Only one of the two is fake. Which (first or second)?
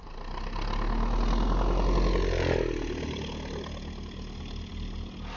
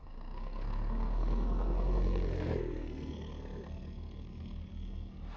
second